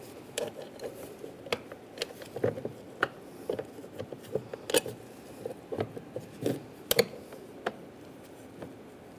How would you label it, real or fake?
real